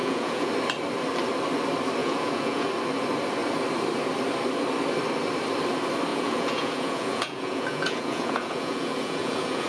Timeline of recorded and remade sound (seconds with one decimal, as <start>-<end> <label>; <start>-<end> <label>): 0.0-0.5 remade; 0.5-2.0 recorded; 2.0-2.7 remade; 2.7-6.1 recorded; 6.1-9.7 remade